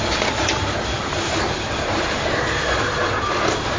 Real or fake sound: real